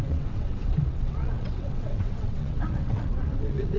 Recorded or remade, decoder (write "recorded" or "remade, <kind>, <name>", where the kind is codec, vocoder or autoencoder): remade, vocoder, WaveNeXt